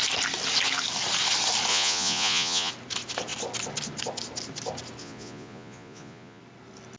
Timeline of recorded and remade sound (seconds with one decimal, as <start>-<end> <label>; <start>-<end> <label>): 0.0-1.7 recorded; 1.7-2.7 remade; 2.7-5.0 recorded; 5.0-6.4 remade; 6.4-7.0 recorded